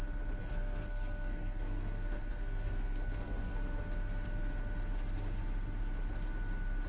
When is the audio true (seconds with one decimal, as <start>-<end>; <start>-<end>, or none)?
0.0-0.4; 3.8-6.9